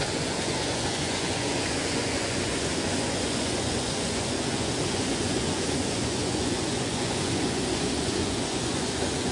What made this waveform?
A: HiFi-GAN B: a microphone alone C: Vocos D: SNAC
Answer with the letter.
C